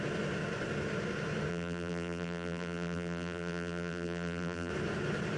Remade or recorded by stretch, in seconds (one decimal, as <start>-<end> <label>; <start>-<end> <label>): 0.0-1.5 recorded; 1.5-4.7 remade; 4.7-5.4 recorded